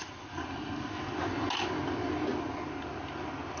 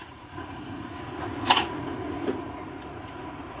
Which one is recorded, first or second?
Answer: first